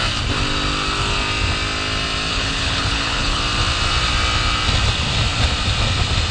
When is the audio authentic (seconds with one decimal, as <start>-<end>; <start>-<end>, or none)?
0.0-2.3; 3.4-6.3